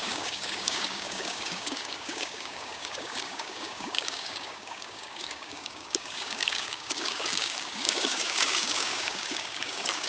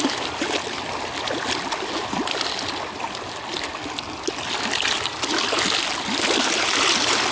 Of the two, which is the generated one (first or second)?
first